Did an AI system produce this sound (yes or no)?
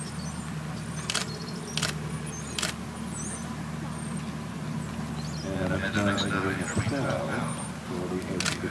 no